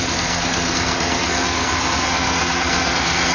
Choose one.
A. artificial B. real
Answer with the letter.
A